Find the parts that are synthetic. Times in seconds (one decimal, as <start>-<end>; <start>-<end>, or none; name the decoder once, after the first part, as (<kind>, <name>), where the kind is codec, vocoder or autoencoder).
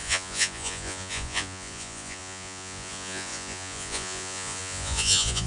0.0-5.5 (vocoder, Vocos)